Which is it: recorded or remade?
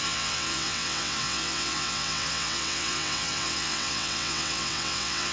remade